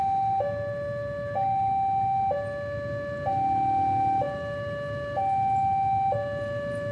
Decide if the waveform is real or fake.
real